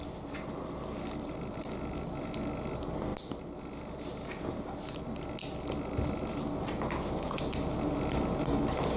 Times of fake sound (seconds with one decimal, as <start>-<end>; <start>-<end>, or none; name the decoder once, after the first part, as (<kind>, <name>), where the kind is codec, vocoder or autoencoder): none